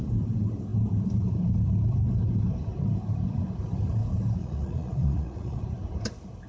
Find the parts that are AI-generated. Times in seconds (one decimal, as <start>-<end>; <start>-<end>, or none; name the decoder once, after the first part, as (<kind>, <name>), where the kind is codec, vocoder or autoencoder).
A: 4.4-5.6 (vocoder, Vocos)